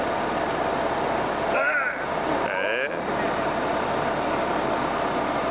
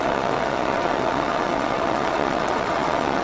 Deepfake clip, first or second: second